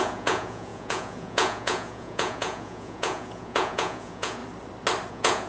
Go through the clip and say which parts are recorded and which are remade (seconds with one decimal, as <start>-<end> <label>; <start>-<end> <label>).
0.0-4.4 remade; 4.4-5.1 recorded; 5.1-5.5 remade